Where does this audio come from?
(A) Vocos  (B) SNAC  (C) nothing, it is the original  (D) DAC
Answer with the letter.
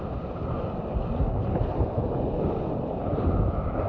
C